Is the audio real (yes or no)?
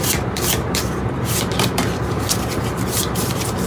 no